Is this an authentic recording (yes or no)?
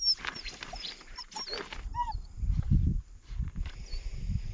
yes